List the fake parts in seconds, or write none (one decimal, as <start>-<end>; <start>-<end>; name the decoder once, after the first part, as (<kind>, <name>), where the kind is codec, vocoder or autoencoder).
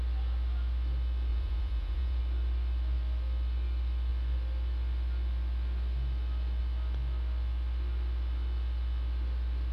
1.3-2.2 (vocoder, Vocos)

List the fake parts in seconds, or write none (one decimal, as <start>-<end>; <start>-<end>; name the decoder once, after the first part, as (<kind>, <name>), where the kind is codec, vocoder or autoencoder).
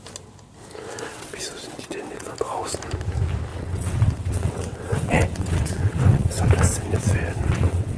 1.1-2.3 (vocoder, WaveNeXt); 3.5-8.0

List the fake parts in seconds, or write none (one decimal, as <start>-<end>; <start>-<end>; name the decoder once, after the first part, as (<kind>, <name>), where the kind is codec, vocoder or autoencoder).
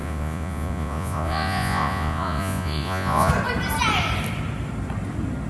0.0-3.3 (vocoder, Vocos)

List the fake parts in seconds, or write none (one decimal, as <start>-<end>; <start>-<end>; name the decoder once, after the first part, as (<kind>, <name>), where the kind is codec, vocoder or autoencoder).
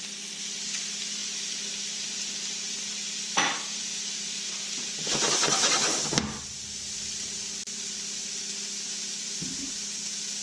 none